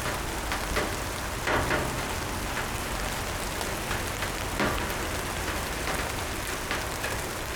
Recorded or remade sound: recorded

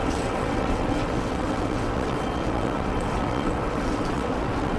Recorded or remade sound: remade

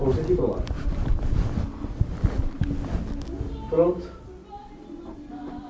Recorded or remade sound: recorded